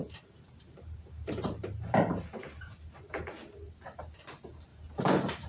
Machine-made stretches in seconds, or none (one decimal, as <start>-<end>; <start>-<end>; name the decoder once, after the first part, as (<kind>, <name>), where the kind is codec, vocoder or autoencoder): 0.0-3.3 (vocoder, BigVGAN v2); 4.7-5.5